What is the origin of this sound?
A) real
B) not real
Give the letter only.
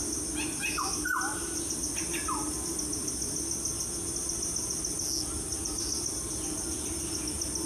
A